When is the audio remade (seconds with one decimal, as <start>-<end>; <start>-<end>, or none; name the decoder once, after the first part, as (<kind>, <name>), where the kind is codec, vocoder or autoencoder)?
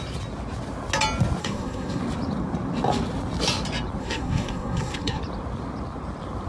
1.4-2.0 (codec, SNAC); 4.0-5.2